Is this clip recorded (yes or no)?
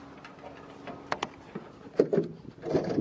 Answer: yes